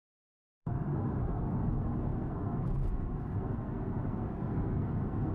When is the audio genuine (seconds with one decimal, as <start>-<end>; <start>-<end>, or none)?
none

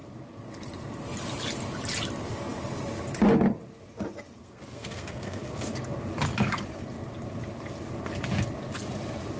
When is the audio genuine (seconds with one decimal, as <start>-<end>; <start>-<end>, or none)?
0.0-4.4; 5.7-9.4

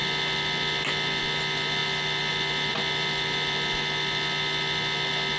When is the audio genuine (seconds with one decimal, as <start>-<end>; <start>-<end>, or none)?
0.0-5.4

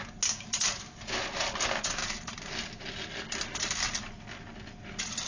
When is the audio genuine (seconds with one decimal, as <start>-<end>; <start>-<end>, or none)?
0.0-5.3

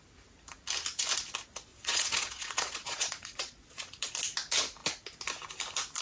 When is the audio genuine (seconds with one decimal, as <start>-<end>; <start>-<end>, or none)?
0.0-1.7; 4.1-6.0

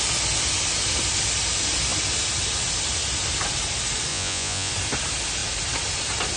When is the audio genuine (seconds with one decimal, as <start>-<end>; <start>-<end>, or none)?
0.0-4.1; 4.7-6.4